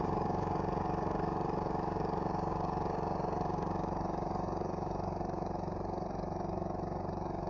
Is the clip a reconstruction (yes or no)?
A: yes